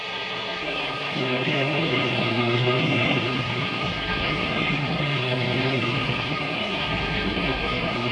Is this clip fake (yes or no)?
yes